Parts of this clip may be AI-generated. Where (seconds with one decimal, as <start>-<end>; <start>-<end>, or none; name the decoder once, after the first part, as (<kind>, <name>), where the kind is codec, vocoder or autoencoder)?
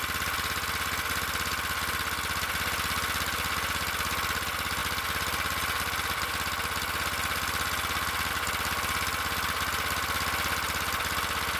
none